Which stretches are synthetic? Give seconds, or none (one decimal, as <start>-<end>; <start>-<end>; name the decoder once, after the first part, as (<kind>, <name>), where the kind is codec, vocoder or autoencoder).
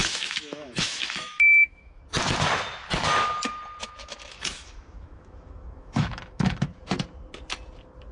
0.0-2.0 (autoencoder, DAC-VAE); 3.8-6.8